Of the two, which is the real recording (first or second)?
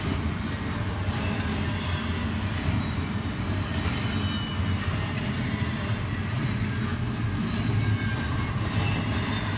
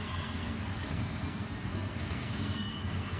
first